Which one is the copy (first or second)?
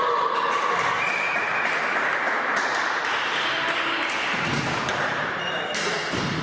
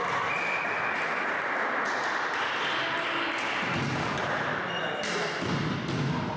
first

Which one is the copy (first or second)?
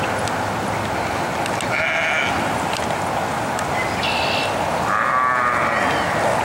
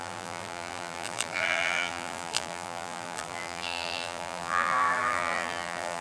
second